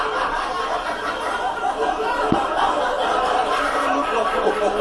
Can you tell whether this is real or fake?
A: fake